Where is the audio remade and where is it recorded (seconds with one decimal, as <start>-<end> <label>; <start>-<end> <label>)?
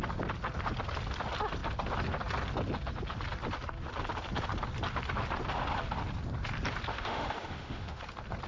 0.0-6.9 recorded; 6.9-8.0 remade; 8.0-8.5 recorded